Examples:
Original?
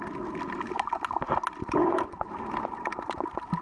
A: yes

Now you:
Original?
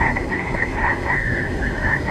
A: no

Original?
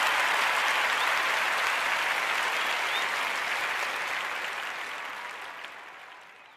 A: yes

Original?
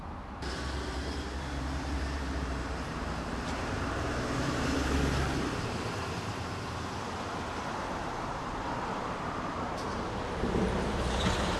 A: no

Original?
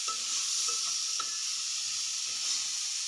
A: yes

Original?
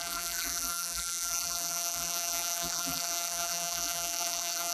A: no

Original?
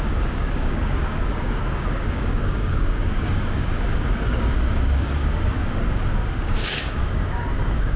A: no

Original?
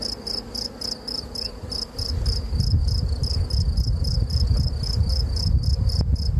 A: yes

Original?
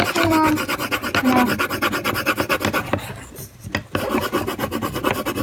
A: yes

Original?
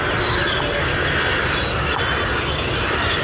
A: yes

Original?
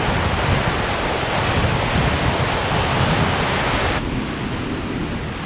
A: yes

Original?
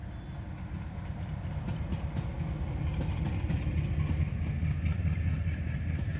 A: yes